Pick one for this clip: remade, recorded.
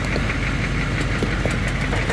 recorded